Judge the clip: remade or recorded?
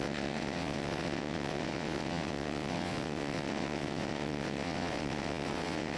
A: remade